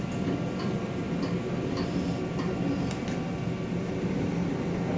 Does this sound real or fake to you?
real